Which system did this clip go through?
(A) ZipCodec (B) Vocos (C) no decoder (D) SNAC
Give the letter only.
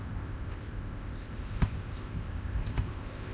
A